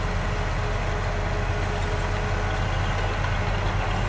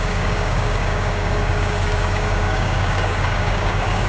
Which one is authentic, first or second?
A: first